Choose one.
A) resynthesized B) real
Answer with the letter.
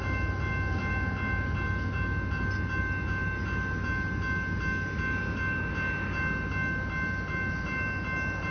B